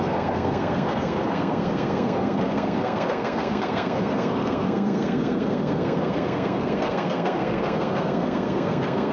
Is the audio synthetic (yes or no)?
yes